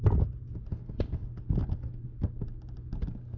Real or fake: real